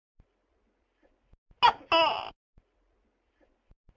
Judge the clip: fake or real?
real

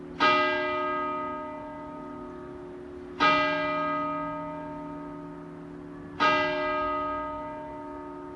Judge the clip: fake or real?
real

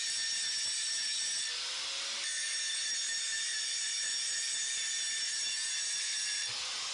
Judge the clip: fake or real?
real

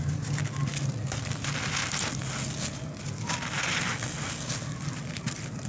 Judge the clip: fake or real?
real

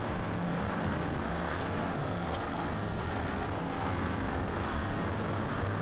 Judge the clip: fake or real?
fake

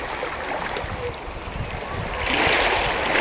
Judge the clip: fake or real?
real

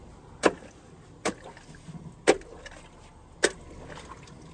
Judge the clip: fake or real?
real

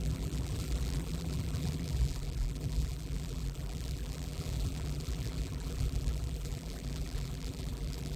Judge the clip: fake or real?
fake